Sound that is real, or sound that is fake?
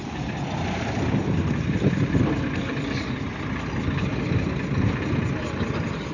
real